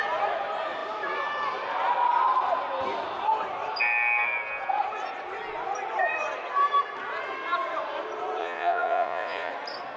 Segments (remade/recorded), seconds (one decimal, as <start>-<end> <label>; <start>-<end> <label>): 0.0-8.4 recorded; 8.4-9.5 remade; 9.5-10.0 recorded